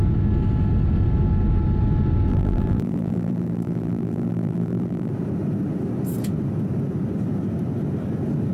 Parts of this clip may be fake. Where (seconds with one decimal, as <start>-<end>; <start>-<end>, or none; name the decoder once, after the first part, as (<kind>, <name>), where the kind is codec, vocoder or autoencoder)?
2.3-5.1 (vocoder, BigVGAN v2)